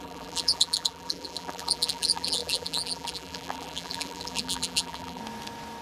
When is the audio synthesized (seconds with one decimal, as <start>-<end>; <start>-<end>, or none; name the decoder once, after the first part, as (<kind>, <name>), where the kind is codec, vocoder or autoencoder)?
0.0-5.2 (vocoder, BigVGAN v2)